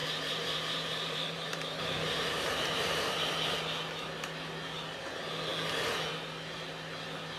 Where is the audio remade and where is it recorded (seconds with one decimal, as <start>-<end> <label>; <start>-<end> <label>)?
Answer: 0.0-2.7 remade; 2.7-7.4 recorded